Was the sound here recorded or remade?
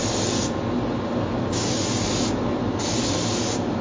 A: recorded